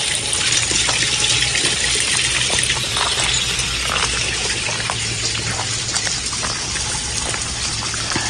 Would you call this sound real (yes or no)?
yes